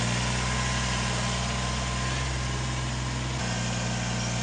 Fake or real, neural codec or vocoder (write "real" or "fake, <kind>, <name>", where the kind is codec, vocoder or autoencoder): real